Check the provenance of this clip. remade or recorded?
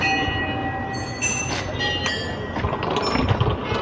recorded